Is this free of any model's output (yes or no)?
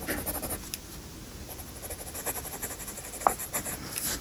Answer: yes